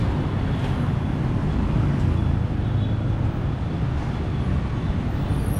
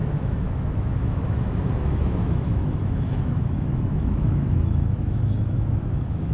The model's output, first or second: second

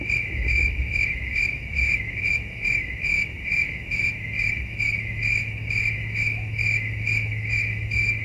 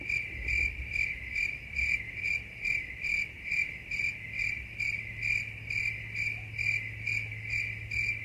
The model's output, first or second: first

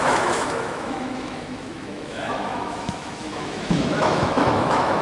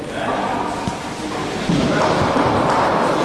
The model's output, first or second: first